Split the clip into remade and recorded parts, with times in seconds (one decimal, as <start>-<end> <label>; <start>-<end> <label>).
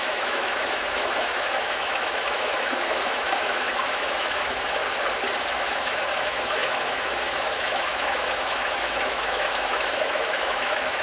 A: 0.0-4.8 remade; 4.8-5.5 recorded; 5.5-11.0 remade